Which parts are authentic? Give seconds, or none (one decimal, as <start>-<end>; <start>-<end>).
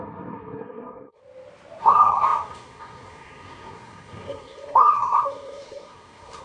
1.2-1.8